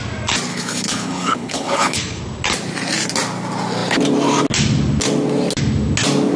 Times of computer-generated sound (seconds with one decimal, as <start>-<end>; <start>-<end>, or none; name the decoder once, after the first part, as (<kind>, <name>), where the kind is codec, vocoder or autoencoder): 0.5-2.2 (codec, HILCodec)